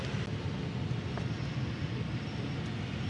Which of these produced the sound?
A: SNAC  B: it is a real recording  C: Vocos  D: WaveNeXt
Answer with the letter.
B